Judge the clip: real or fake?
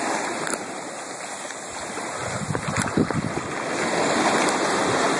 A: fake